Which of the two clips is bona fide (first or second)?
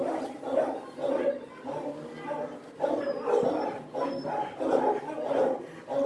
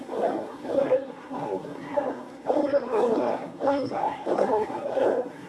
first